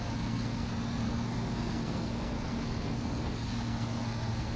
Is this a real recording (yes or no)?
no